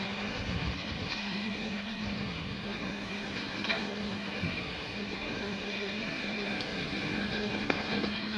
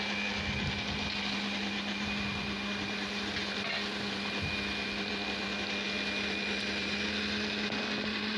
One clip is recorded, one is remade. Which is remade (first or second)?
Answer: first